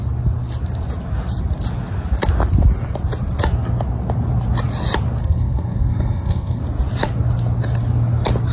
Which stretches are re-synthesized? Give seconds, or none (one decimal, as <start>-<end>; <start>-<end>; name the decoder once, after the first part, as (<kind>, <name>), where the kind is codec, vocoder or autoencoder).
5.2-6.6 (codec, SNAC)